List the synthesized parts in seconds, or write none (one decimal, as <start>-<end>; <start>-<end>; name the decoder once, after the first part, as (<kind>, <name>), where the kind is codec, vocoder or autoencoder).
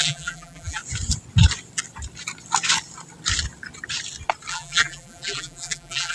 0.0-0.8 (vocoder, BigVGAN v2); 4.5-6.1